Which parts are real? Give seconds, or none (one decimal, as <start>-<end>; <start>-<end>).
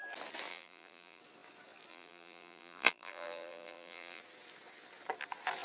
0.0-0.5; 1.2-1.9; 4.2-5.6